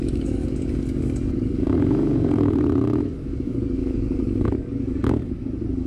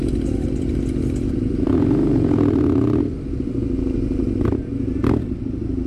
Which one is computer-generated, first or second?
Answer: first